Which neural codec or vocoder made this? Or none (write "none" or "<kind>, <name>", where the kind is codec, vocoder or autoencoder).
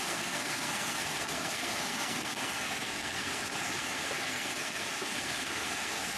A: codec, SNAC